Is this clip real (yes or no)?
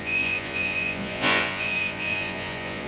no